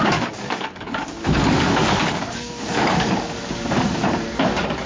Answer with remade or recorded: remade